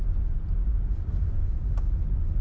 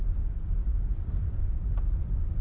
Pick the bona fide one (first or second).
first